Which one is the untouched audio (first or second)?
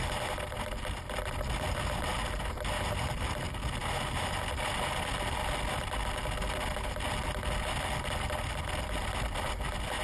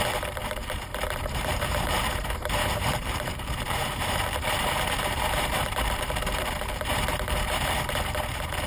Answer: first